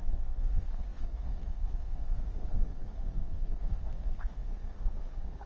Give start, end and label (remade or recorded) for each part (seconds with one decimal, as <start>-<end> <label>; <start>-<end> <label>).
0.0-5.5 remade